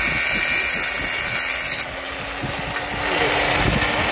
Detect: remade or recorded recorded